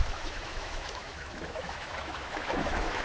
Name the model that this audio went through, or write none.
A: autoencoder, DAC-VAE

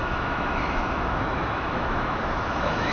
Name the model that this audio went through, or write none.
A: autoencoder, DAC-VAE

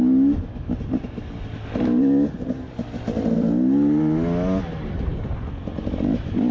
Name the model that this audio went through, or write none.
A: none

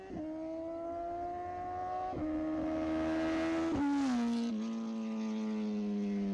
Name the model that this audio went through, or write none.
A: none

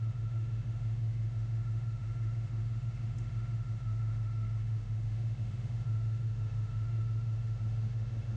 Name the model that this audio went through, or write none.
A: autoencoder, DAC-VAE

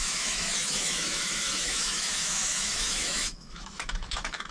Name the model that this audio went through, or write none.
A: autoencoder, DAC-VAE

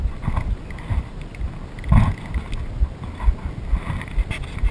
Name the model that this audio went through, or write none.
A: none